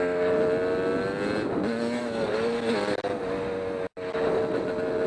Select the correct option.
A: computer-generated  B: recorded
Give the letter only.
B